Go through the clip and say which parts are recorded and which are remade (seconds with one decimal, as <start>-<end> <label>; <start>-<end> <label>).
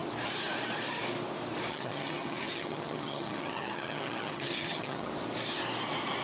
0.0-1.7 recorded; 1.7-5.1 remade; 5.1-6.2 recorded